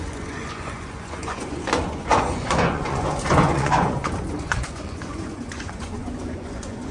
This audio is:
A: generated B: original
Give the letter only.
A